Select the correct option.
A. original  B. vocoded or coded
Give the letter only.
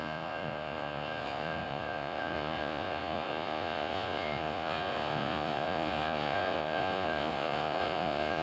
B